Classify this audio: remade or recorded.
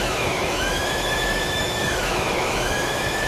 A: remade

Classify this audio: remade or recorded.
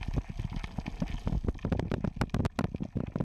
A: recorded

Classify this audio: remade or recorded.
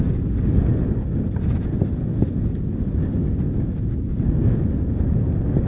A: recorded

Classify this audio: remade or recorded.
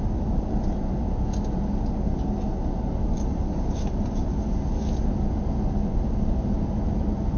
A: recorded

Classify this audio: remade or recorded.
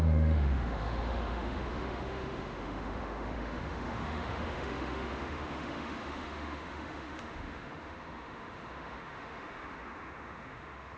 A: remade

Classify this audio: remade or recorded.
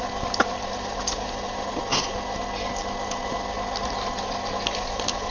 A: recorded